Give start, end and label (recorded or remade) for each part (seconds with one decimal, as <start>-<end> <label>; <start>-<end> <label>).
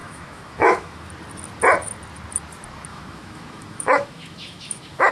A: 0.0-1.1 remade; 1.1-2.9 recorded; 2.9-5.1 remade